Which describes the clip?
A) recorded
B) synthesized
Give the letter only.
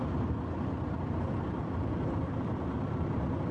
A